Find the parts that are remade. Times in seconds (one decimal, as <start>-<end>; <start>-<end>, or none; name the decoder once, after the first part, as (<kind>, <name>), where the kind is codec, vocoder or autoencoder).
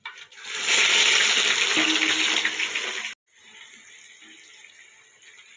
none